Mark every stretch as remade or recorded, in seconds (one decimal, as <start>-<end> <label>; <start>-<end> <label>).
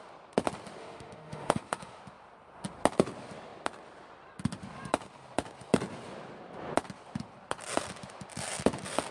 0.0-0.8 recorded; 0.8-2.0 remade; 2.0-9.1 recorded